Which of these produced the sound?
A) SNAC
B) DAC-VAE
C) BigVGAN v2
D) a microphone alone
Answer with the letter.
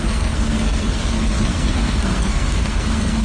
A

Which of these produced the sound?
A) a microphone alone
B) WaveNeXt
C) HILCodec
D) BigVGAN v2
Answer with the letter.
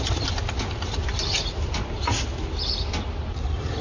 A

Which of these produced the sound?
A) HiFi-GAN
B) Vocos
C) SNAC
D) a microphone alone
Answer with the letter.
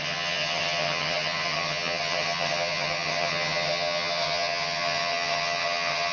A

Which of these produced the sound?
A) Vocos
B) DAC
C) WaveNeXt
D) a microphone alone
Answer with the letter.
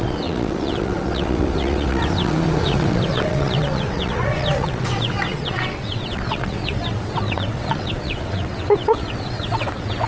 C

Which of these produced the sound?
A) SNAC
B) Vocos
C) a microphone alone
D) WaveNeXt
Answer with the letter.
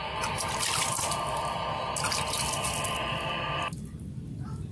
C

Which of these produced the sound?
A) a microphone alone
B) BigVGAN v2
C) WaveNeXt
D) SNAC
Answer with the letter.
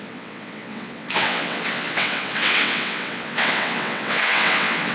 C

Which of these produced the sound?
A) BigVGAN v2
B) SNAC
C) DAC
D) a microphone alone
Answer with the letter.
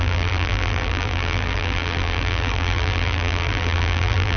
A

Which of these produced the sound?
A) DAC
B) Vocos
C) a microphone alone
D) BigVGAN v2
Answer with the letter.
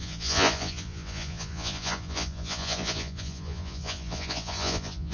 B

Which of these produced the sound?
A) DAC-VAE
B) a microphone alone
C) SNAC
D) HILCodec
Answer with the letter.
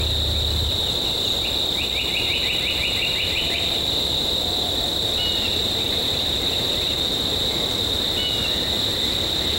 B